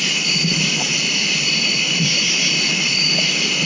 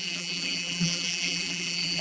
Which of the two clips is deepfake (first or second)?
second